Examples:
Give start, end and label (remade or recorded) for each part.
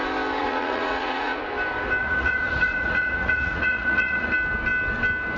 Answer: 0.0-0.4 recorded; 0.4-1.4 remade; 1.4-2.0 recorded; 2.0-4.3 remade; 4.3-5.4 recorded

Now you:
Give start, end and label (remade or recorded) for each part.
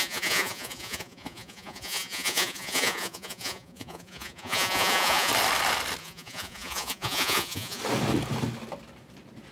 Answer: 0.0-5.3 remade; 5.3-6.0 recorded; 6.0-7.8 remade; 7.8-9.5 recorded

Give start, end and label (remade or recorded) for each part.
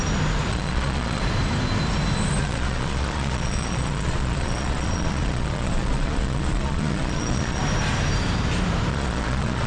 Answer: 0.0-0.5 recorded; 0.5-1.2 remade; 1.2-2.4 recorded; 2.4-7.6 remade; 7.6-8.9 recorded; 8.9-9.7 remade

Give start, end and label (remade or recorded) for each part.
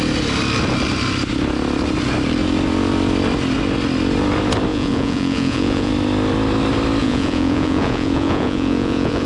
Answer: 0.0-4.7 recorded; 4.7-5.9 remade; 5.9-7.0 recorded; 7.0-9.3 remade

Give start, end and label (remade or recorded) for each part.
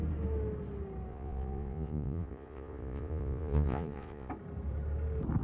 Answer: 0.0-1.1 recorded; 1.1-4.3 remade; 4.3-5.4 recorded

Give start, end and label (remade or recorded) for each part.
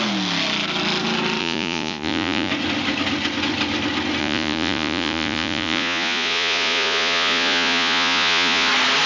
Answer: 0.0-1.4 recorded; 1.4-2.5 remade; 2.5-4.2 recorded; 4.2-8.7 remade; 8.7-9.1 recorded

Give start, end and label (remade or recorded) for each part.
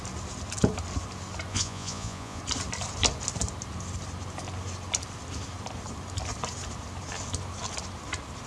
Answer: 0.0-1.5 recorded; 1.5-2.4 remade; 2.4-8.5 recorded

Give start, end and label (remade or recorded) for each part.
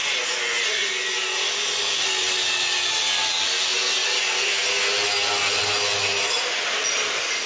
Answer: 0.0-1.8 remade; 1.8-3.7 recorded; 3.7-4.5 remade; 4.5-7.5 recorded